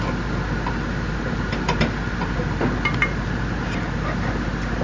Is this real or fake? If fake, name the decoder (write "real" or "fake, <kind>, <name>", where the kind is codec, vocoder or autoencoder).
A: real